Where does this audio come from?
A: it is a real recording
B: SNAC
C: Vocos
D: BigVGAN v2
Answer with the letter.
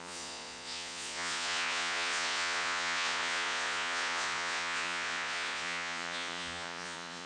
C